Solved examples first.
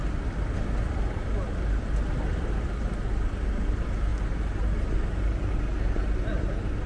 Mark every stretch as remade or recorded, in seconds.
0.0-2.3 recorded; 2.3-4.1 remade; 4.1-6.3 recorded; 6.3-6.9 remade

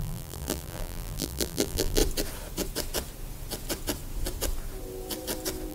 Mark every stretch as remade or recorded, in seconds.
0.0-2.0 remade; 2.0-5.7 recorded

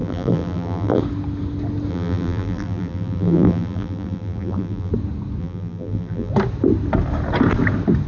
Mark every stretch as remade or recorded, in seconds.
0.0-1.0 remade; 1.0-1.9 recorded; 1.9-4.9 remade; 4.9-5.4 recorded; 5.4-6.3 remade; 6.3-8.1 recorded